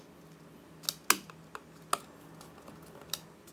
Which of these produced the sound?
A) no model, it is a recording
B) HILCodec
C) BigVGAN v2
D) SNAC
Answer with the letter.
A